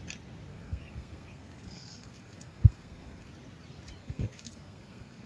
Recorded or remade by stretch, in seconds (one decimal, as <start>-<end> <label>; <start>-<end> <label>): 0.0-0.5 recorded; 0.5-3.3 remade; 3.3-4.0 recorded; 4.0-5.3 remade